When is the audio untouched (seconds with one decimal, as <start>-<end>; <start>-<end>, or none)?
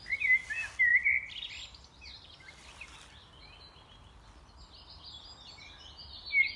0.0-6.6